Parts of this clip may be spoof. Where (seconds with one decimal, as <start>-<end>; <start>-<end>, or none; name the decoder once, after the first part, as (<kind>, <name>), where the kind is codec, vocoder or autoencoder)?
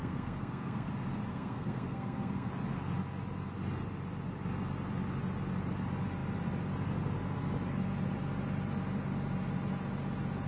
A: 0.0-0.9 (codec, SNAC); 1.3-2.5